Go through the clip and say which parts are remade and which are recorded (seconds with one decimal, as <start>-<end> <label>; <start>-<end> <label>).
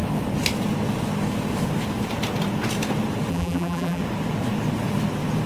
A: 0.0-3.3 recorded; 3.3-4.0 remade; 4.0-5.5 recorded